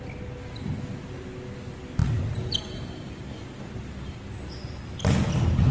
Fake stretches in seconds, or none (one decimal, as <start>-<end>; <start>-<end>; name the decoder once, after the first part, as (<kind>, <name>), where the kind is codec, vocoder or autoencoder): none